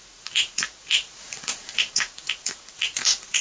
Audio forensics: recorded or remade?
remade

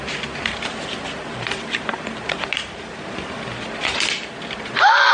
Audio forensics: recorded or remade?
remade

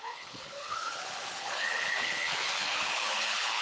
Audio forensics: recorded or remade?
remade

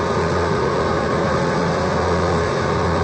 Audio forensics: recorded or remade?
remade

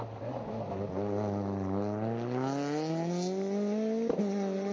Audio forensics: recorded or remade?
recorded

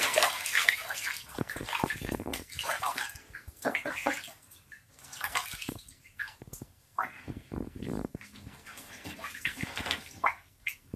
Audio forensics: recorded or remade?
remade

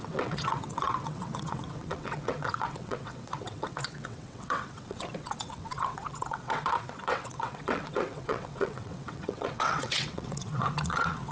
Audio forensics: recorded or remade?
remade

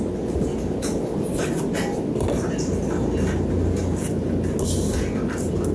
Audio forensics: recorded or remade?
recorded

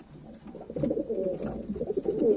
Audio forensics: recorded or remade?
recorded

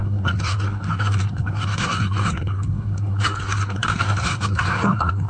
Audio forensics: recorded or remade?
remade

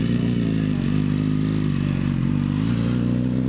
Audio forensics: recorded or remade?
recorded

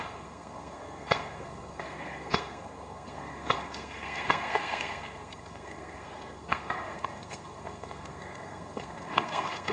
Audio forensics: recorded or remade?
remade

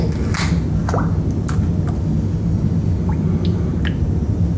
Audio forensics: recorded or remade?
recorded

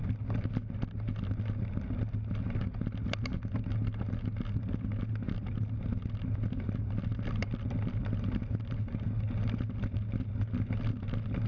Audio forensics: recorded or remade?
recorded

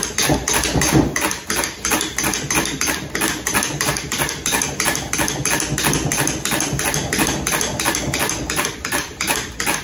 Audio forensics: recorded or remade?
recorded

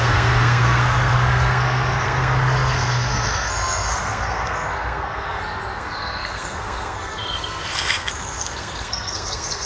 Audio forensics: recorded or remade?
remade